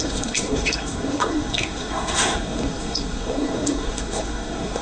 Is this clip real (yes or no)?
no